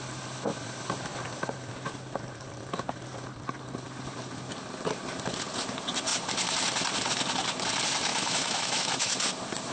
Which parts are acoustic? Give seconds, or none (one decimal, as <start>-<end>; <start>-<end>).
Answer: 0.0-8.1; 9.2-9.7